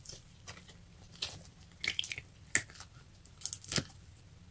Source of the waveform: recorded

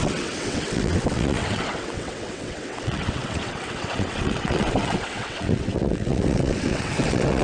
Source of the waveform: remade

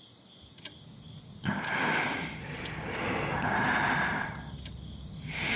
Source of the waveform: recorded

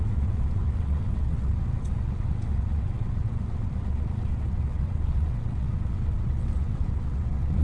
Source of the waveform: remade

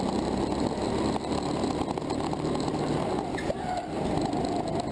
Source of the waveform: recorded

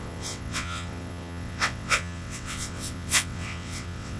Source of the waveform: remade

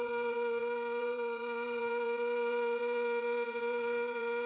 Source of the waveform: remade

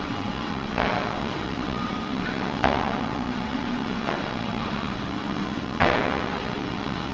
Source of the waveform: remade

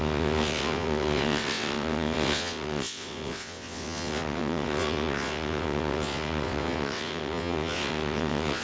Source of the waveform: remade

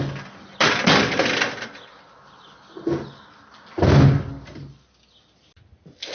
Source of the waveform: recorded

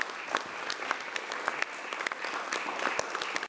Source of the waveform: recorded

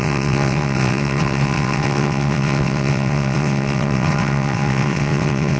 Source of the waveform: remade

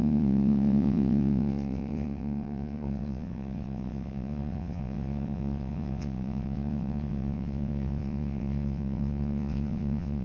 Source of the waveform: remade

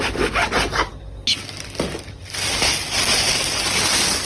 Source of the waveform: recorded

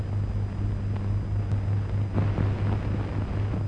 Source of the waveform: recorded